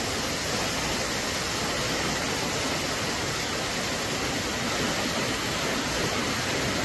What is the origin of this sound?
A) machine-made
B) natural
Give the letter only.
B